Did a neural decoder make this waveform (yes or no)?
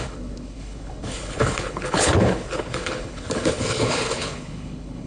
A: yes